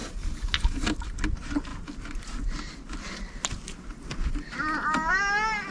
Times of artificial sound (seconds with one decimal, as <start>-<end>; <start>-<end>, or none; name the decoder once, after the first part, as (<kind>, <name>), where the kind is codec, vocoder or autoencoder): none